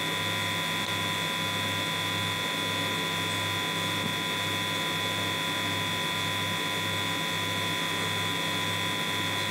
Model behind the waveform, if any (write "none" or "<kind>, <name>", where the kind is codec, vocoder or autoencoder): none